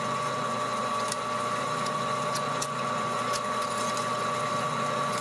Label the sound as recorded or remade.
remade